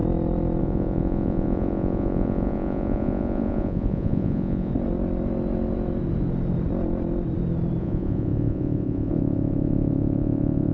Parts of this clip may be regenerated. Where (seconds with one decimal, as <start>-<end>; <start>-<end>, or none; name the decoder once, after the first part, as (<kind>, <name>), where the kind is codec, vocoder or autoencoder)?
0.6-4.7 (vocoder, Vocos); 7.8-10.7

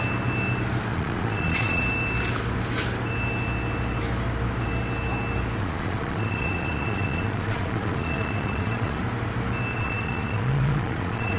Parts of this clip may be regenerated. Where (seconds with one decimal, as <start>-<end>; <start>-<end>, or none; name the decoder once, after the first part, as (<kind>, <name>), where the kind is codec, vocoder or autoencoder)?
0.9-1.8 (vocoder, Vocos); 5.6-9.0; 9.7-11.4

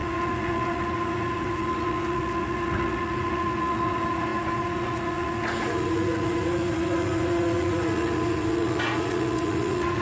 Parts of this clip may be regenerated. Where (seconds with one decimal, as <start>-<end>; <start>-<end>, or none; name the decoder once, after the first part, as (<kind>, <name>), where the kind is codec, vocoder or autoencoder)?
0.0-10.0 (vocoder, Vocos)

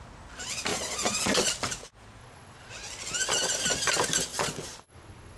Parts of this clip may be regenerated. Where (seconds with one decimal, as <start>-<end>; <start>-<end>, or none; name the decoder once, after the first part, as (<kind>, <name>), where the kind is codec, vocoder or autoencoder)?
0.7-1.5 (vocoder, Vocos); 2.2-2.9; 4.3-5.4